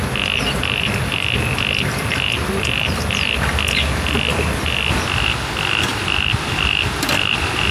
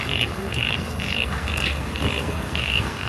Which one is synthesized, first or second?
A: second